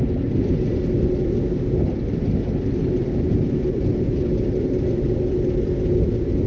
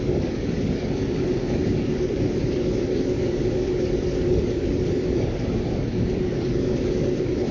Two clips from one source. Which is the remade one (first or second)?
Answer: second